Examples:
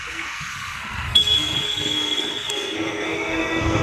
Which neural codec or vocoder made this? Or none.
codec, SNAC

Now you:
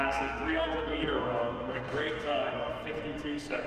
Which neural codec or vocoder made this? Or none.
codec, SNAC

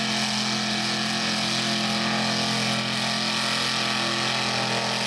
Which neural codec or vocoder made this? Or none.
none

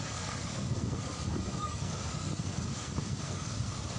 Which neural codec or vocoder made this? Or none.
codec, SNAC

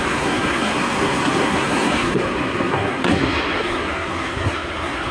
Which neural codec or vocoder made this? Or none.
codec, SNAC